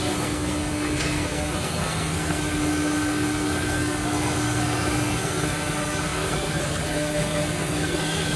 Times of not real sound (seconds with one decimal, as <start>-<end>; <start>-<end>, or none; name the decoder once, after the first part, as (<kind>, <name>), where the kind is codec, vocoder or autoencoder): 0.0-8.4 (codec, SNAC)